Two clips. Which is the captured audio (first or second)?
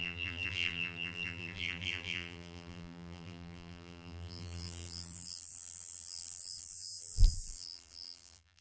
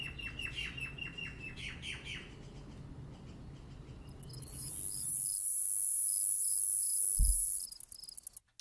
second